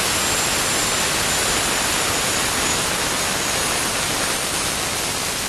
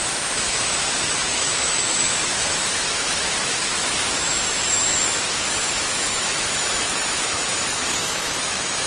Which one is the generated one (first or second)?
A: second